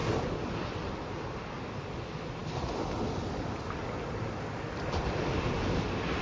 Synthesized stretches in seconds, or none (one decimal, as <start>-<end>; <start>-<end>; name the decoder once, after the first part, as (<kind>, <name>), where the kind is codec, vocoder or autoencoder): none